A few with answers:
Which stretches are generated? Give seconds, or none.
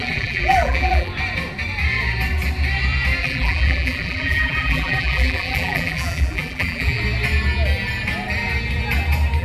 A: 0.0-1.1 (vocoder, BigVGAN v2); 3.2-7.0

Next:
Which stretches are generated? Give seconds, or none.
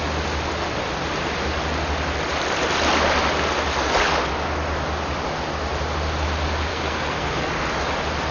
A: 6.7-7.5 (codec, SNAC)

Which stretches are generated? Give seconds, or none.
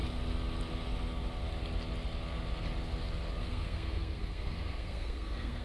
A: 3.4-5.6 (codec, SNAC)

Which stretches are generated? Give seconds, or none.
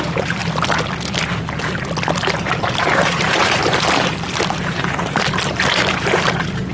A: 0.0-0.4 (vocoder, BigVGAN v2); 2.3-3.6; 4.6-6.7